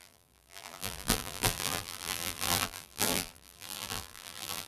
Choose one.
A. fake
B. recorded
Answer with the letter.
A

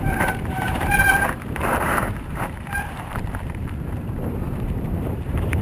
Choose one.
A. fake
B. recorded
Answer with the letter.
A